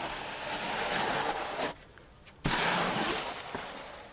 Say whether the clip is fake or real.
real